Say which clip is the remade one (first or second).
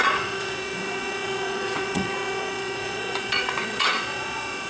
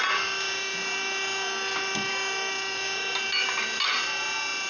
first